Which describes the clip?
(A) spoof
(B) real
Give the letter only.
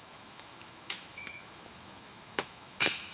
A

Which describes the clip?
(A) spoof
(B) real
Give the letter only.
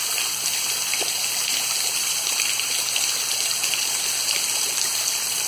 B